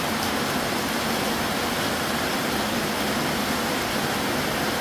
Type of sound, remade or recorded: recorded